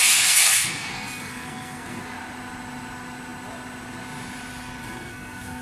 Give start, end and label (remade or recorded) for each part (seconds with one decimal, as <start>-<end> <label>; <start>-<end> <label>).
0.0-2.0 remade; 2.0-4.8 recorded; 4.8-5.6 remade